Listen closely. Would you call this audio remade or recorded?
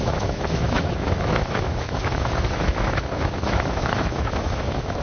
remade